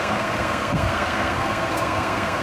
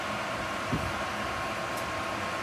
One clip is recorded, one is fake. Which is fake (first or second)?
first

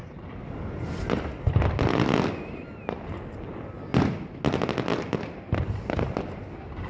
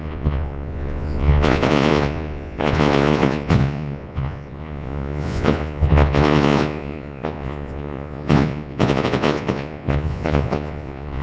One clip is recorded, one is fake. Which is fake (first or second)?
second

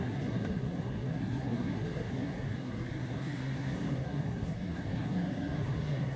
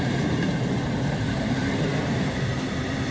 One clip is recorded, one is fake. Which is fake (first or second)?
first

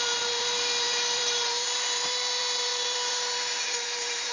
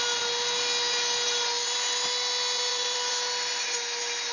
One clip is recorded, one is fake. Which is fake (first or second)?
first